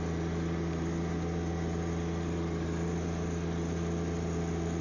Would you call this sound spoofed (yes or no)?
no